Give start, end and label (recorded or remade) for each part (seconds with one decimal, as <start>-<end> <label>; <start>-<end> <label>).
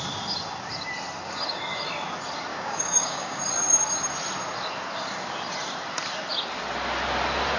0.0-2.5 recorded; 2.5-3.4 remade; 3.4-7.6 recorded